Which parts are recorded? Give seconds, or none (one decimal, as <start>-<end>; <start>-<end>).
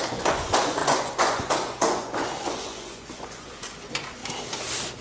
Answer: 4.2-5.0